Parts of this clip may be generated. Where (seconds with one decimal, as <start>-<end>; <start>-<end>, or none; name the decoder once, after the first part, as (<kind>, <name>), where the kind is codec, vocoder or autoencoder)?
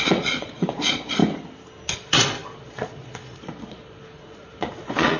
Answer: 0.0-1.2 (vocoder, Vocos); 1.9-5.2